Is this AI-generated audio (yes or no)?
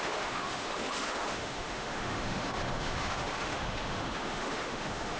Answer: yes